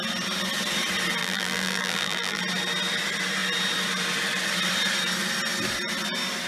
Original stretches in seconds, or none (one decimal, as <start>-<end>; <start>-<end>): 0.0-1.2; 2.4-6.5